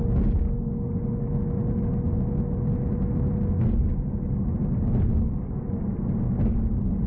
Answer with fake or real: real